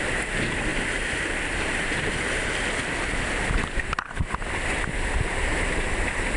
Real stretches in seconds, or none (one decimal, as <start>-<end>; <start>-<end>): 0.0-6.4